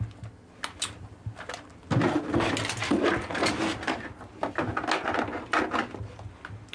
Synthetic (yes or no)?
no